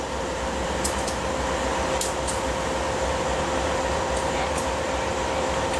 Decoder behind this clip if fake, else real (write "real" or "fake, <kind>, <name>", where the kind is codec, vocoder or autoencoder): real